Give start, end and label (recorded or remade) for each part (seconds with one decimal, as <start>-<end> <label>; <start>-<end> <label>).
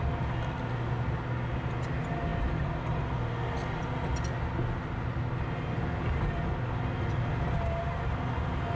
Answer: 0.0-8.8 recorded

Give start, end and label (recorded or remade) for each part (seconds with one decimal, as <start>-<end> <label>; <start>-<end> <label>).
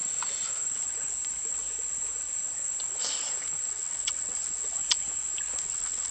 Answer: 0.0-3.7 recorded; 3.7-4.8 remade; 4.8-5.6 recorded; 5.6-6.1 remade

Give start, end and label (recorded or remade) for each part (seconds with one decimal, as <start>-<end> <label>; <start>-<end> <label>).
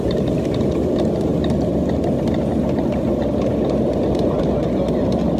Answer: 0.0-5.4 recorded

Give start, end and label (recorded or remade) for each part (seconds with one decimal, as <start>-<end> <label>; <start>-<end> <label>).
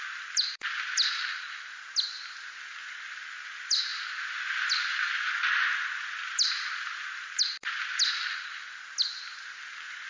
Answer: 0.0-10.1 recorded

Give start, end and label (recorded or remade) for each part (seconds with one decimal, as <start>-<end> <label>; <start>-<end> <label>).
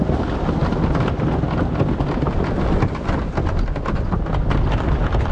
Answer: 0.0-5.3 recorded